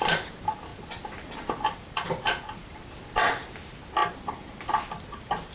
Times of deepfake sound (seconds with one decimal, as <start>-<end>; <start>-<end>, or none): 0.7-3.0; 4.0-5.0